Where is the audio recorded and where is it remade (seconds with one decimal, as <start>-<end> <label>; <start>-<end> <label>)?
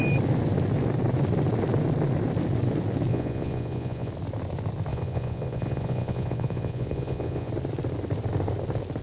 0.0-3.1 recorded; 3.1-4.1 remade; 4.1-4.9 recorded; 4.9-7.5 remade; 7.5-9.0 recorded